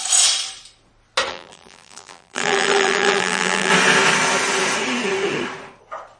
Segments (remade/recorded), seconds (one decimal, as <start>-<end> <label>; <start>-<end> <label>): 0.0-1.3 recorded; 1.3-3.7 remade; 3.7-6.2 recorded